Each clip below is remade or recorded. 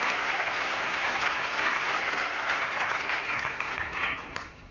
remade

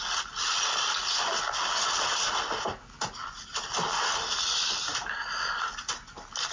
recorded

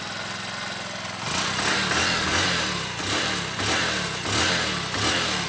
recorded